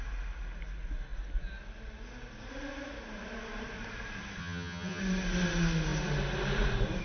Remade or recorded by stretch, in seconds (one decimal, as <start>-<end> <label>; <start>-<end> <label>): 0.0-4.4 recorded; 4.4-5.0 remade; 5.0-7.0 recorded